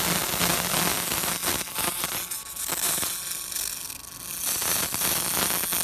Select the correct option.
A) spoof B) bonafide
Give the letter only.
B